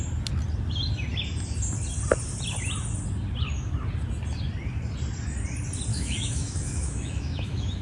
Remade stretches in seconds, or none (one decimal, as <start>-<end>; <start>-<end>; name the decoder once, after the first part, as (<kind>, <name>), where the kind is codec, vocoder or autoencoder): 5.9-7.8 (autoencoder, DAC-VAE)